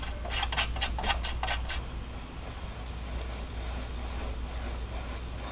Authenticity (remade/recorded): recorded